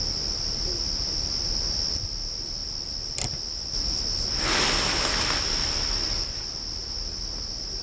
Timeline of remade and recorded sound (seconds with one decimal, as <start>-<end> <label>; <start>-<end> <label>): 0.0-7.8 recorded